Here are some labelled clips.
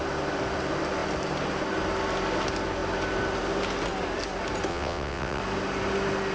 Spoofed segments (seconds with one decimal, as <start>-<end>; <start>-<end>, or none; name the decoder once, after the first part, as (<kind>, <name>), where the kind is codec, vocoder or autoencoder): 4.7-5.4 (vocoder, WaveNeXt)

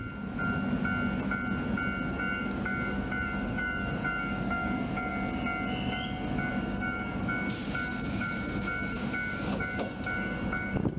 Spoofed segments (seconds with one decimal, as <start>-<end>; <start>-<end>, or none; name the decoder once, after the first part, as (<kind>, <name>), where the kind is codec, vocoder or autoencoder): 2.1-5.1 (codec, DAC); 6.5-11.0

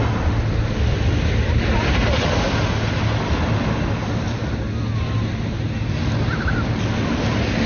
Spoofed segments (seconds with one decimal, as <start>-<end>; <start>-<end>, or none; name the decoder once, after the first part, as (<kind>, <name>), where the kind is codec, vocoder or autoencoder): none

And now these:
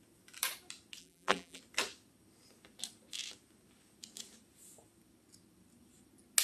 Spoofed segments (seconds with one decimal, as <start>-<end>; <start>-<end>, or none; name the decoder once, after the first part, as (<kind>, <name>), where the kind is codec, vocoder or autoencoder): 1.0-1.6 (vocoder, BigVGAN v2)